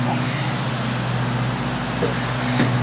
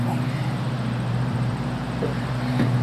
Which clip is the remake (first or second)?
second